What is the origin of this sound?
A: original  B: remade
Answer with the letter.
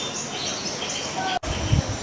A